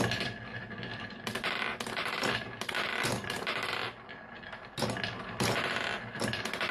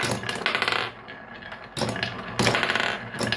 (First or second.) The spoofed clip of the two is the first